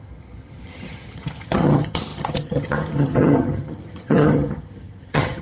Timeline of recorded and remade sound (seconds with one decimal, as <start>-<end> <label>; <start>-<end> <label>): 0.0-5.4 remade